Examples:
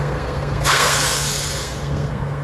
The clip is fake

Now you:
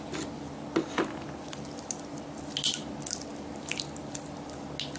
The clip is real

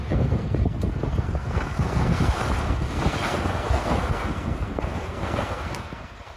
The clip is fake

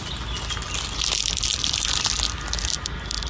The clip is real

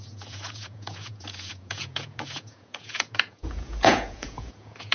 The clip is fake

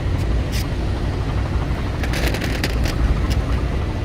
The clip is real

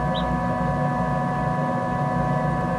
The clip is real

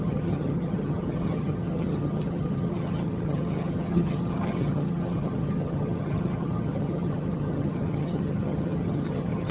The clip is fake